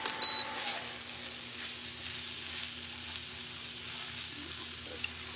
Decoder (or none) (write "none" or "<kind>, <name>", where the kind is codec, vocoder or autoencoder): none